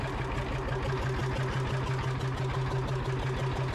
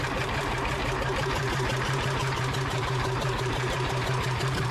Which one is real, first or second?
first